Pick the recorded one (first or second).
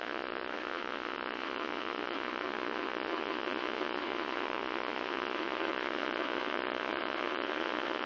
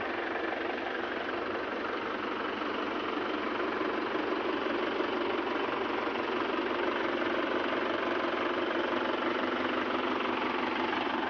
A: second